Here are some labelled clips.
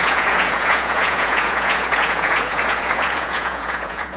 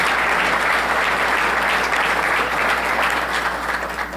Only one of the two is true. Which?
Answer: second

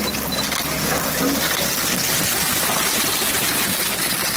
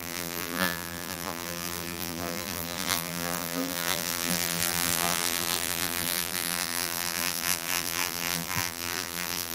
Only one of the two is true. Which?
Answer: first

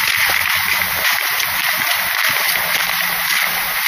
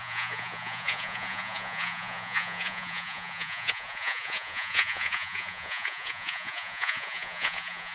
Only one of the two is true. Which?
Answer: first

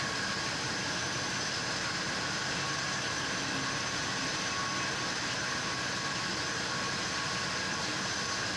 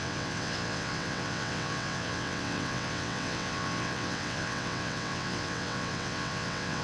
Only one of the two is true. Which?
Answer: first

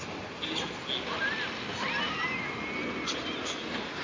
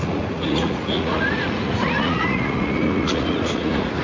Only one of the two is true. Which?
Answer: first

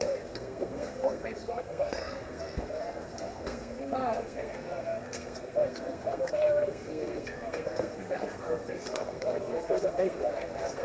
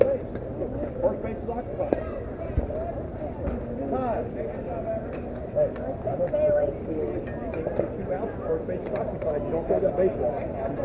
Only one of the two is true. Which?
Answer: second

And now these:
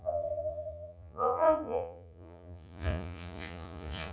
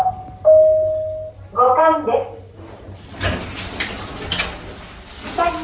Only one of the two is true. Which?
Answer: second